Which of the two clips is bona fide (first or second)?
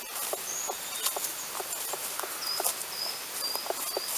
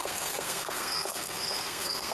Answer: first